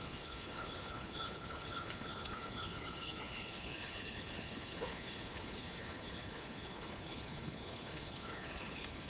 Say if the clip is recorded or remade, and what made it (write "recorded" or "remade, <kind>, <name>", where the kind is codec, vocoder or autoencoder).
remade, codec, HILCodec